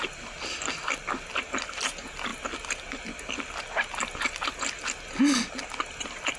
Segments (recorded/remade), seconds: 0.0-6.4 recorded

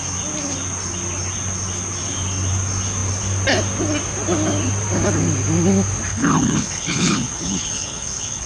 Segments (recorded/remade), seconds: 0.0-6.1 recorded; 6.1-8.5 remade

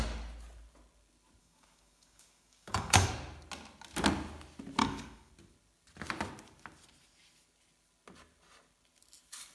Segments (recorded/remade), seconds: 0.0-1.4 recorded; 1.4-3.1 remade; 3.1-4.8 recorded; 4.8-5.3 remade; 5.3-9.5 recorded

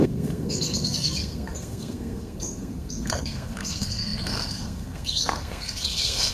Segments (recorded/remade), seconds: 0.0-6.3 remade

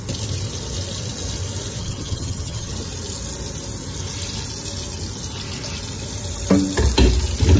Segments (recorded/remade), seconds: 0.0-1.8 recorded; 1.8-2.7 remade; 2.7-7.6 recorded

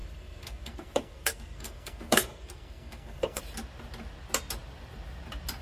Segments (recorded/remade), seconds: 0.0-3.4 remade; 3.4-5.6 recorded